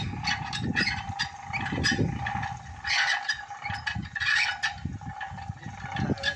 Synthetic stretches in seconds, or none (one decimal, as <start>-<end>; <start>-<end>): none